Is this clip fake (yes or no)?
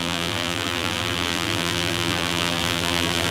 yes